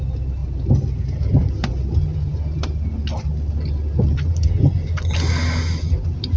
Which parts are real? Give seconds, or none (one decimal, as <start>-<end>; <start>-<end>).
0.0-0.4; 1.5-2.1; 2.7-6.4